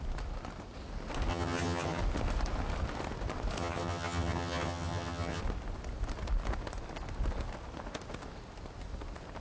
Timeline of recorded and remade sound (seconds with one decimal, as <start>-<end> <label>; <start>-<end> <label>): 0.0-1.3 recorded; 1.3-2.0 remade; 2.0-3.6 recorded; 3.6-5.4 remade; 5.4-9.4 recorded